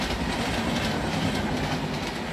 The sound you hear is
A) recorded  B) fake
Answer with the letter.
A